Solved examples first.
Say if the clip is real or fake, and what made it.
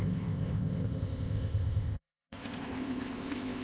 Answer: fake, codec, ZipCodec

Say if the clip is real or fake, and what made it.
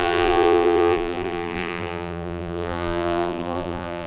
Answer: fake, vocoder, BigVGAN v2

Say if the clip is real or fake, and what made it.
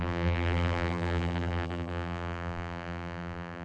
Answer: fake, vocoder, BigVGAN v2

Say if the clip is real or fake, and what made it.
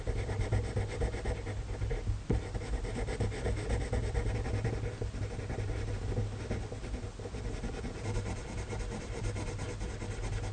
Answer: real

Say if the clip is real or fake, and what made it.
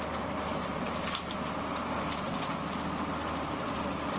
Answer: real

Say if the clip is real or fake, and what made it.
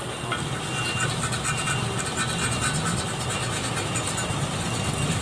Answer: real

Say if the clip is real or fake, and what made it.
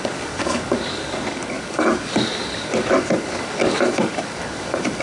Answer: fake, codec, DAC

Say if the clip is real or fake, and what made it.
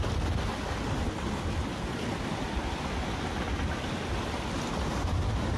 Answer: real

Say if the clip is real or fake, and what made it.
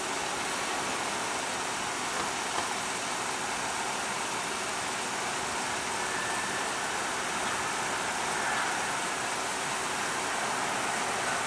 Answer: real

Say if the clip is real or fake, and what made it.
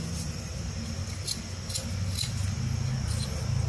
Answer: real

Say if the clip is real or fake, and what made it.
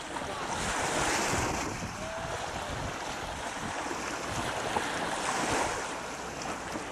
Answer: real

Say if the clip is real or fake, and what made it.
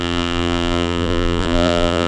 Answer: fake, vocoder, BigVGAN v2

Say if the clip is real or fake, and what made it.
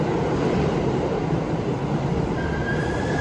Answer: fake, vocoder, BigVGAN v2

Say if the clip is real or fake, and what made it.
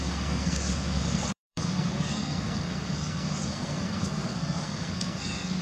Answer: fake, codec, SNAC